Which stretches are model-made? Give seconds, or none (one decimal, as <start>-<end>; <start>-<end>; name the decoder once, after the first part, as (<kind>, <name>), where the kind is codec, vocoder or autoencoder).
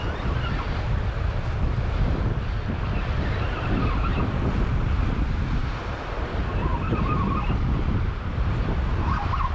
4.1-5.1 (vocoder, BigVGAN v2); 5.6-6.1; 6.7-8.9